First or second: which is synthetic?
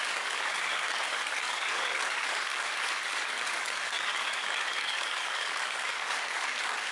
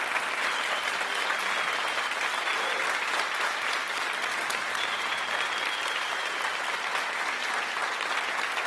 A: first